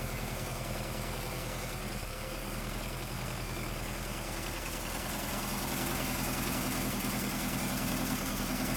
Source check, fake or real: fake